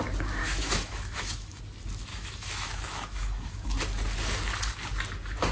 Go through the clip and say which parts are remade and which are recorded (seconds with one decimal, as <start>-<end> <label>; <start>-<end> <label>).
0.0-0.4 recorded; 0.4-1.6 remade; 1.6-2.1 recorded; 2.1-3.8 remade; 3.8-5.5 recorded